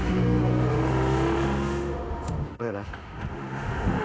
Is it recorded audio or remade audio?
remade